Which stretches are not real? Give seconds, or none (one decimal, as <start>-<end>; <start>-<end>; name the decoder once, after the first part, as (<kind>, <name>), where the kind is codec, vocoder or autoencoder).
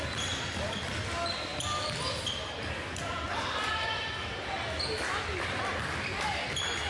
none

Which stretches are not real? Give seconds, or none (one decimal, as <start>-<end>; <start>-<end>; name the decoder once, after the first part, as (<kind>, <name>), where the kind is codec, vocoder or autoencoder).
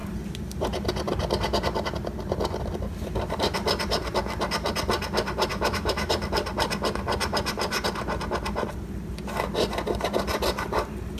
5.5-6.1 (autoencoder, DAC-VAE)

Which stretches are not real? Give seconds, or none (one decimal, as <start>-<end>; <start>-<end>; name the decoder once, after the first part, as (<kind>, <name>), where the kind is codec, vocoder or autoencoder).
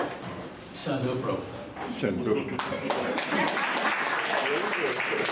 0.8-2.1 (vocoder, BigVGAN v2)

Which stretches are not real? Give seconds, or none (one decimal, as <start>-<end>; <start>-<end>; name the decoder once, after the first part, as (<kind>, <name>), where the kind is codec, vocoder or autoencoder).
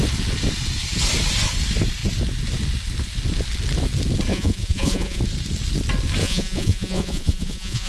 4.3-5.2 (vocoder, Vocos); 6.2-7.9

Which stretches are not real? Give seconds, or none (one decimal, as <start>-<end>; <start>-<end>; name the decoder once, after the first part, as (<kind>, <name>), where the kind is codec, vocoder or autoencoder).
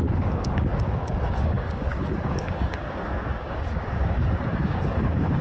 0.0-5.4 (codec, DAC)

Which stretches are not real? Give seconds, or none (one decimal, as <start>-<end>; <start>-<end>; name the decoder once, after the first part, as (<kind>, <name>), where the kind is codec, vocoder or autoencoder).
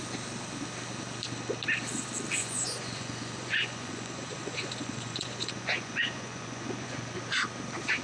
2.4-7.2 (vocoder, Vocos)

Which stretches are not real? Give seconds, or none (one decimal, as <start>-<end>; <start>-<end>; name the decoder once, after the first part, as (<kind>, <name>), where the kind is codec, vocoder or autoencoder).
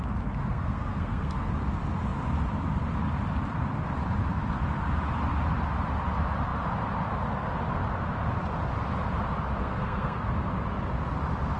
0.4-1.5 (codec, SNAC); 9.6-10.3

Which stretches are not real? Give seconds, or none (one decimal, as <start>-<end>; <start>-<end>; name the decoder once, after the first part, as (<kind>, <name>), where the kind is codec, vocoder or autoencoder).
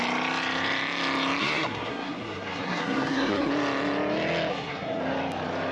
1.4-3.5 (codec, SNAC); 4.5-5.0